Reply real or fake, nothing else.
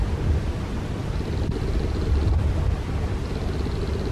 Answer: real